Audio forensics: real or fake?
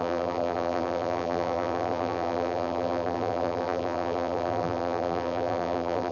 fake